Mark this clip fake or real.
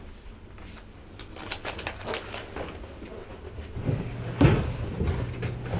real